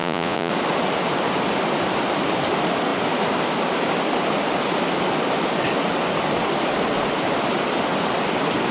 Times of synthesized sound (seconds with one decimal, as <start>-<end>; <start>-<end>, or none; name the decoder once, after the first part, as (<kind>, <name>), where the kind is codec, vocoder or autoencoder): 0.0-0.5 (vocoder, Vocos)